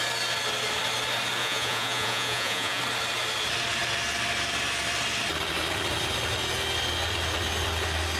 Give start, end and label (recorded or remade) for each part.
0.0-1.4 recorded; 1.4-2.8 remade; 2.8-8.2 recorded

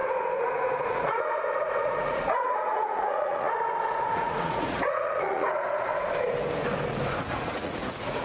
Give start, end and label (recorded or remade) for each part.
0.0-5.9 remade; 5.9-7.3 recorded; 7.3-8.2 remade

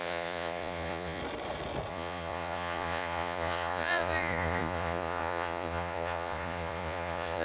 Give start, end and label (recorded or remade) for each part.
0.0-1.2 remade; 1.2-1.9 recorded; 1.9-7.4 remade

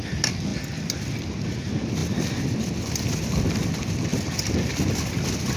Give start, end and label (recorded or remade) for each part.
0.0-5.6 recorded

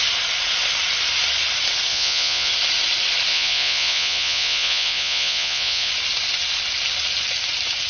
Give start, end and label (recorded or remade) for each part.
0.0-1.9 recorded; 1.9-2.5 remade; 2.5-3.3 recorded; 3.3-5.9 remade; 5.9-7.9 recorded

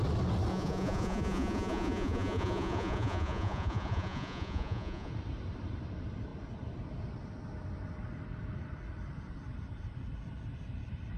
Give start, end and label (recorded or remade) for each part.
0.0-0.5 recorded; 0.5-5.1 remade; 5.1-11.2 recorded

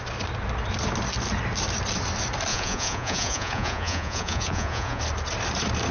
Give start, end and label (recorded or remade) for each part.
0.0-2.5 recorded; 2.5-5.0 remade; 5.0-5.9 recorded

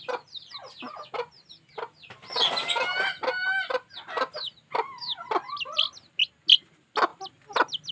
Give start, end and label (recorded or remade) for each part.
0.0-7.9 recorded